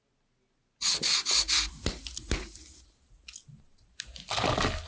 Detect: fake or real real